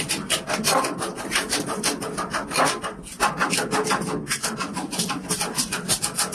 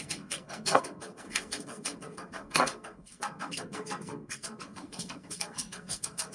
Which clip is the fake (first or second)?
second